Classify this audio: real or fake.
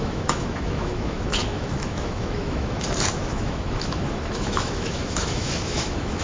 fake